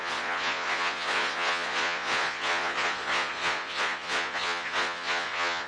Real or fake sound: fake